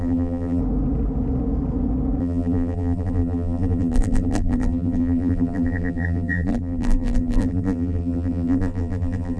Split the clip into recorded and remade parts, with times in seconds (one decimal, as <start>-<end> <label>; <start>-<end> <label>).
0.0-0.6 remade; 0.6-2.2 recorded; 2.2-9.4 remade